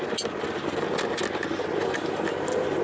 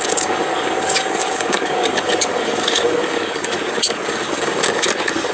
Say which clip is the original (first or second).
first